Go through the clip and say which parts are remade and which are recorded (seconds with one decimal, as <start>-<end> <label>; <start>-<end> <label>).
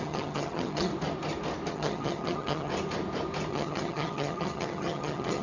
0.0-0.9 remade; 0.9-1.7 recorded; 1.7-2.7 remade; 2.7-3.5 recorded; 3.5-5.4 remade